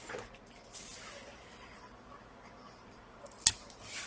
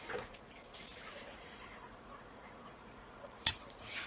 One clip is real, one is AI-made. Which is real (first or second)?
first